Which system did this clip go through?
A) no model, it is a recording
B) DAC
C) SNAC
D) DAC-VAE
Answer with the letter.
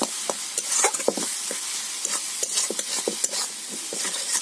A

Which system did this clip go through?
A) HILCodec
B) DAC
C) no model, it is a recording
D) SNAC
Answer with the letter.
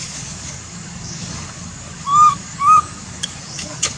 B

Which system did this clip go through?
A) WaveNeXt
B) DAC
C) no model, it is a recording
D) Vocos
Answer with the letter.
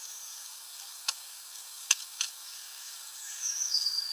B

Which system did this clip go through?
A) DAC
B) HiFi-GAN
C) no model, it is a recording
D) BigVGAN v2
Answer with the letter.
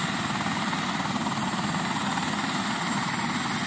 C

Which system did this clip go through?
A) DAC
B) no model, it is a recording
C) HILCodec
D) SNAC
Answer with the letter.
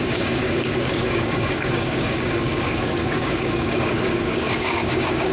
A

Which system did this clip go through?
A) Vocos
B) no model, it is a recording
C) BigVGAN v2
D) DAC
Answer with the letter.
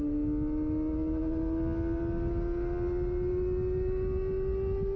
B